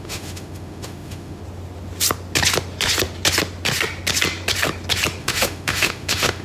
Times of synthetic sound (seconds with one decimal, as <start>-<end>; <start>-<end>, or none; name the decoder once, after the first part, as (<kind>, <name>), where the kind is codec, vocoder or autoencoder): 0.0-1.4 (autoencoder, DAC-VAE); 5.2-6.4

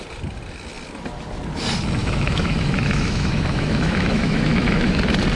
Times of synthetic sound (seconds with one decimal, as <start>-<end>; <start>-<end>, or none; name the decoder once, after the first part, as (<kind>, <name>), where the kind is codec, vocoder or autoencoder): 2.0-5.0 (autoencoder, DAC-VAE)

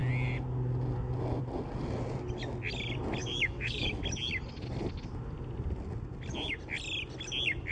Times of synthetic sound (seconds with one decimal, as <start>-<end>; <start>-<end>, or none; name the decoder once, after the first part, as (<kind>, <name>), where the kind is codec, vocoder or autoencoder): 3.2-4.0 (autoencoder, DAC-VAE)

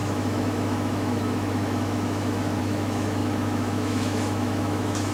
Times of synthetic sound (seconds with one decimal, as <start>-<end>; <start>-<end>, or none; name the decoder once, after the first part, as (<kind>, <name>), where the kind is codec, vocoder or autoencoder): 0.0-5.1 (autoencoder, DAC-VAE)

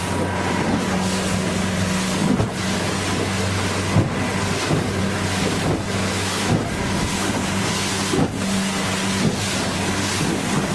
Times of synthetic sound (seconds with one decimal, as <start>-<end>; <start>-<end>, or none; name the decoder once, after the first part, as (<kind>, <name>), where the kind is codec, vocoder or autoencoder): 6.0-6.6 (autoencoder, DAC-VAE)

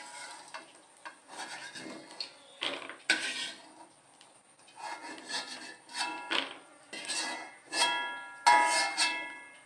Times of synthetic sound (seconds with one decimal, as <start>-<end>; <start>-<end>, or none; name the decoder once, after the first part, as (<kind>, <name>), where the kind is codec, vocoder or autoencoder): none

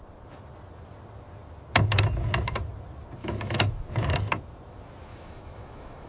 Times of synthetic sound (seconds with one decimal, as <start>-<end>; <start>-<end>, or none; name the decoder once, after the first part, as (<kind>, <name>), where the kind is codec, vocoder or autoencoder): 3.2-3.7 (autoencoder, DAC-VAE); 5.1-6.1